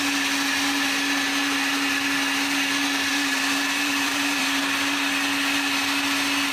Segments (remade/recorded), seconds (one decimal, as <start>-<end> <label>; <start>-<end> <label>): 0.0-3.1 recorded; 3.1-4.6 remade; 4.6-6.5 recorded